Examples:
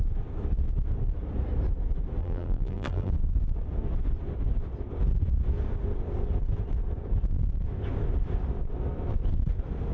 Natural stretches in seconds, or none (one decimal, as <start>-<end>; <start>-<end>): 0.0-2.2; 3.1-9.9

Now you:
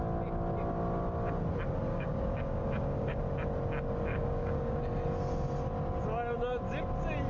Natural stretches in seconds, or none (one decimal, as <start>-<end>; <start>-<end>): 0.0-1.9; 3.2-4.1; 4.8-7.3

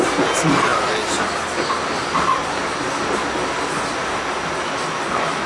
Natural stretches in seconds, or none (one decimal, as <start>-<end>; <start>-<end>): 0.0-5.5

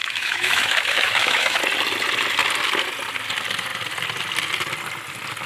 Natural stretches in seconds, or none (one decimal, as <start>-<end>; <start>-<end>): 1.6-5.5

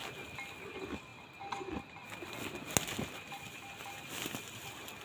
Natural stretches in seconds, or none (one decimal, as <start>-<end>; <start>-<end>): 0.0-5.0

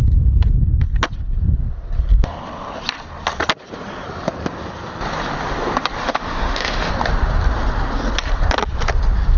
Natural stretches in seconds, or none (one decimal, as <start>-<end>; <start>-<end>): 0.0-6.0; 6.9-9.4

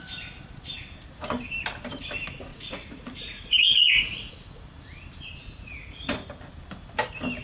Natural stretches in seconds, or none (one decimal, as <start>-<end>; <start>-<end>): 0.0-2.5; 4.3-5.4; 6.1-7.4

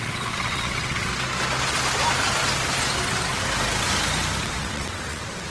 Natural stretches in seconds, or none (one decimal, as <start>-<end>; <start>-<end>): 1.1-4.4